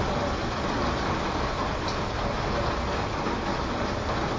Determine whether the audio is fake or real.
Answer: real